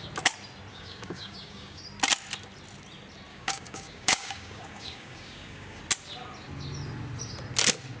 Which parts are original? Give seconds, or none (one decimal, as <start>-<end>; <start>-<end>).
0.0-0.7; 1.8-3.3; 5.8-8.0